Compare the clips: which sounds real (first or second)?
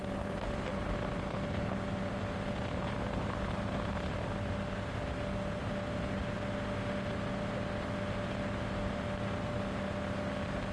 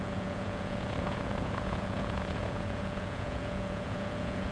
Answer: first